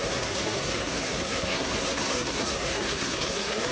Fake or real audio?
fake